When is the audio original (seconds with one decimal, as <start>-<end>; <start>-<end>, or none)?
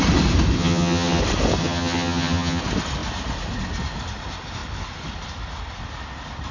0.0-0.6; 1.2-1.6; 2.6-6.5